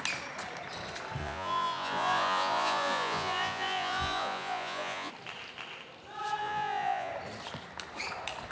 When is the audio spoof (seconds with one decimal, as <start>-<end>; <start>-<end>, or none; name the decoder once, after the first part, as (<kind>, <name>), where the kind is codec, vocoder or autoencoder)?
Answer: 1.2-5.1 (vocoder, Vocos); 6.4-7.1